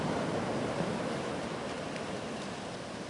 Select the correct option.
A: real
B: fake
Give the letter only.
A